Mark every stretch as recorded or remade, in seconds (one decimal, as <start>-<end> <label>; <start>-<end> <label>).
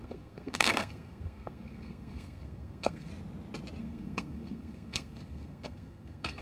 0.0-3.1 remade; 3.1-3.8 recorded; 3.8-6.4 remade